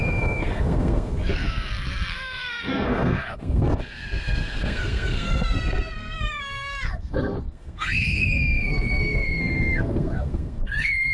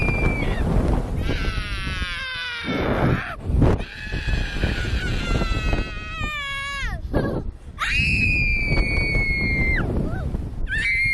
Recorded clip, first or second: second